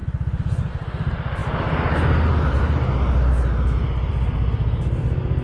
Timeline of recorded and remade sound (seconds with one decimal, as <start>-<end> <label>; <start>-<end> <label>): 0.0-5.4 recorded